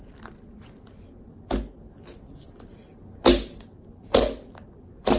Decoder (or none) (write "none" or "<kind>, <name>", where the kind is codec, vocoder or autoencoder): none